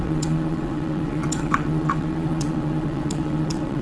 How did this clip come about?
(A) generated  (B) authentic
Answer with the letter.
A